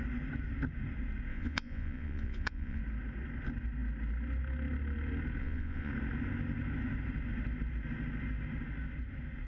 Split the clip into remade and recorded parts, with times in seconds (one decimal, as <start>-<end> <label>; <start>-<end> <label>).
0.0-1.3 recorded; 1.3-2.8 remade; 2.8-5.4 recorded; 5.4-5.9 remade; 5.9-9.5 recorded